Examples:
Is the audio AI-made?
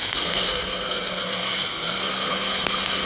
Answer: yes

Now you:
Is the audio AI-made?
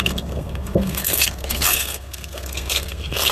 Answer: yes